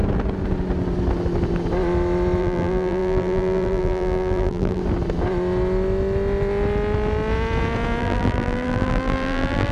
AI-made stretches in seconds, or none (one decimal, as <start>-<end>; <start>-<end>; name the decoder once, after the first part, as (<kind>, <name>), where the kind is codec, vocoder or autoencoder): 2.4-4.8 (vocoder, BigVGAN v2); 8.0-9.7